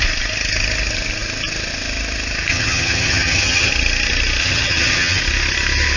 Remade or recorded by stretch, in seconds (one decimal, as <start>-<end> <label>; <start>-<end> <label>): 0.0-2.5 recorded; 2.5-3.7 remade; 3.7-4.4 recorded; 4.4-5.2 remade; 5.2-6.0 recorded